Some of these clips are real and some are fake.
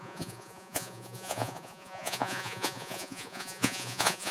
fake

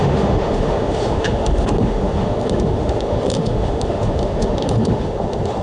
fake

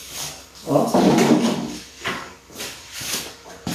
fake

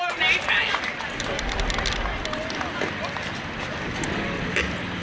real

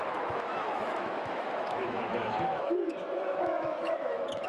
fake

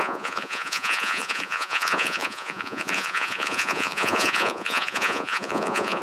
fake